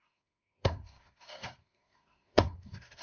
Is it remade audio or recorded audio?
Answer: remade